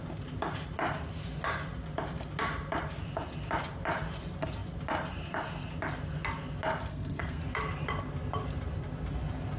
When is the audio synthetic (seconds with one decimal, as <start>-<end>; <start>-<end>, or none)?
6.9-7.4